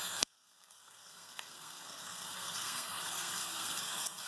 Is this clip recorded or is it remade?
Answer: remade